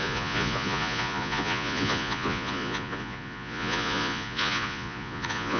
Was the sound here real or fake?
fake